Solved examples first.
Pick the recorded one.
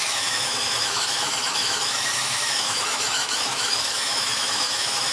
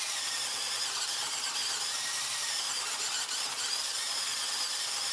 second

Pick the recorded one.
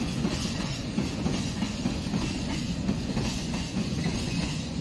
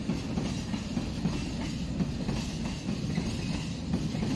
second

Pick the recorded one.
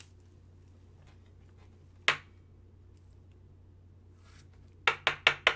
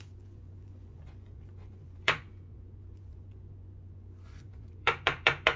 first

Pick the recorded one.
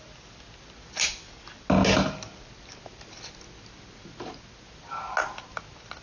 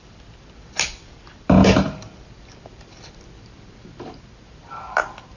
first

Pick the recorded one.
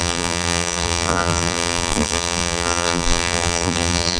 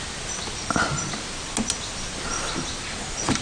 second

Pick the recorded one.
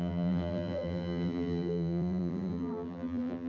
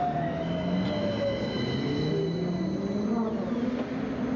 second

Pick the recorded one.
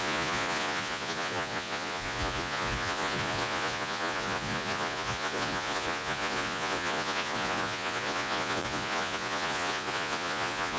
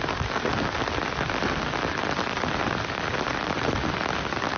second